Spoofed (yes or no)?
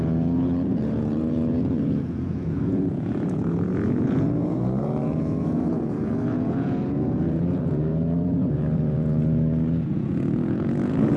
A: yes